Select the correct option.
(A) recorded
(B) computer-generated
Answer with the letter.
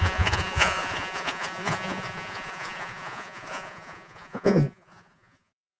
B